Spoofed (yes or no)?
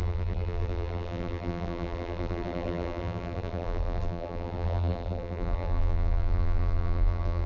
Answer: yes